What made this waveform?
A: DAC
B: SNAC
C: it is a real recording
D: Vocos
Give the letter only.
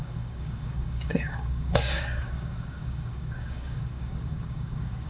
A